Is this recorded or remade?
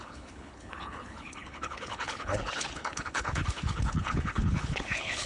remade